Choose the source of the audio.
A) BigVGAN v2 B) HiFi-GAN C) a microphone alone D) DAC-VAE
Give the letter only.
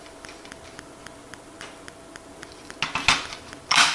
C